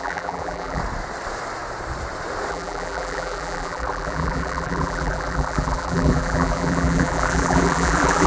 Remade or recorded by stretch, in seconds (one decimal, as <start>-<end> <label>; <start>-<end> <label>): 0.0-0.8 remade; 0.8-2.5 recorded; 2.5-8.3 remade